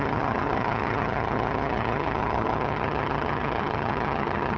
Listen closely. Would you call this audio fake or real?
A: fake